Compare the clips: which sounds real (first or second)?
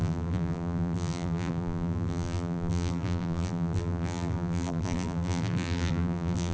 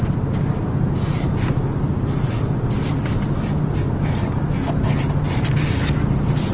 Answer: second